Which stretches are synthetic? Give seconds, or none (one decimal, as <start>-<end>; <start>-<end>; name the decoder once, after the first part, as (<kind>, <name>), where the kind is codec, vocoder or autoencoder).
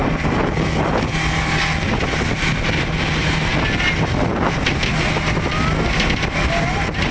none